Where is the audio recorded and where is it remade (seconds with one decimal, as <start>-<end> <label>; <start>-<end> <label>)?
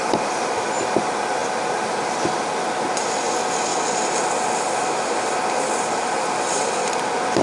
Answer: 0.0-7.4 recorded